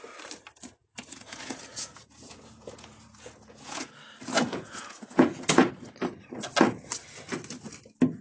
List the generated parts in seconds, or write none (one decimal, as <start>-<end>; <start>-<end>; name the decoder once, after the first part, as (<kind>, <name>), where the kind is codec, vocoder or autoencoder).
0.8-3.9 (vocoder, Vocos); 4.3-5.7